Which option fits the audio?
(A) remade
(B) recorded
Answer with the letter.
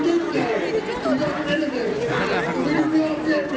B